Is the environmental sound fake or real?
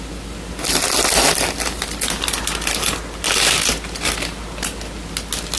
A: real